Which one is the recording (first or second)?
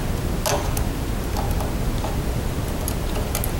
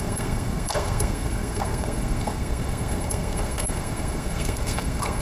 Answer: first